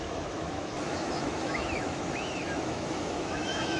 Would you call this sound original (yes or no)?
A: no